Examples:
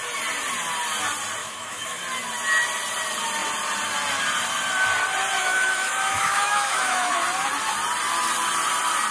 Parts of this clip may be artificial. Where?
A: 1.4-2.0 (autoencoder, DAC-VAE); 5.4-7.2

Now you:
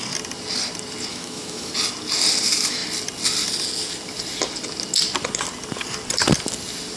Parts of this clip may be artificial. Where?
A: 1.1-1.7 (autoencoder, DAC-VAE)

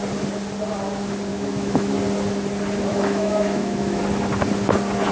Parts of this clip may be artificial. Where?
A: 1.3-1.9 (autoencoder, DAC-VAE); 2.9-4.0

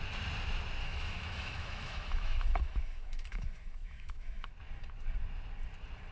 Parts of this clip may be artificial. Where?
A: 0.8-4.5 (autoencoder, DAC-VAE)